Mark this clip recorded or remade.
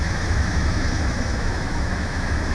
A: remade